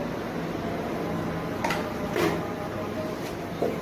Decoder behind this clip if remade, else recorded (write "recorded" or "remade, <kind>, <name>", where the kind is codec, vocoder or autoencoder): recorded